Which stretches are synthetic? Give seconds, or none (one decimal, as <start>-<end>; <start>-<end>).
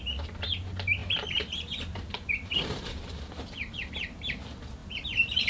1.0-3.9; 4.8-5.5